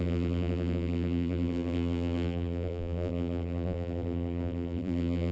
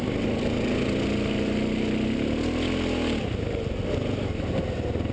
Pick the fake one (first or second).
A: first